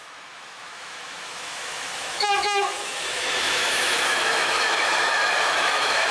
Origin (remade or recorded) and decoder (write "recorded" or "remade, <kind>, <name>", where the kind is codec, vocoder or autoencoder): remade, autoencoder, DAC-VAE